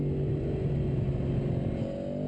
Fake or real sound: real